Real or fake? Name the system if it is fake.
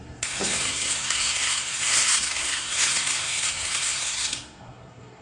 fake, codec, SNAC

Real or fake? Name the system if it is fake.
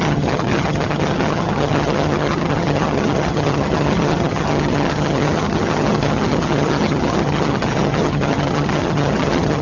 fake, vocoder, HiFi-GAN